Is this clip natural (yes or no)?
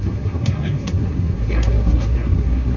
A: no